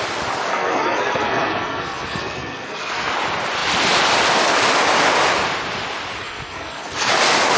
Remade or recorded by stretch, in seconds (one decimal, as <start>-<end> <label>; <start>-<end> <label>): 0.0-0.5 recorded; 0.5-3.1 remade; 3.1-6.2 recorded; 6.2-7.1 remade; 7.1-7.6 recorded